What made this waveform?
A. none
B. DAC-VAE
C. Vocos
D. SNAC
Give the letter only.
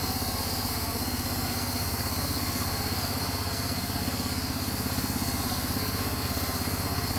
D